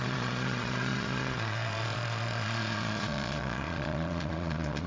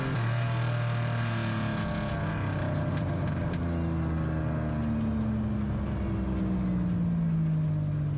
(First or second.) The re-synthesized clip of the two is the first